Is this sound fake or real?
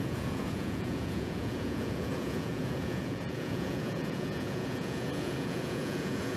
fake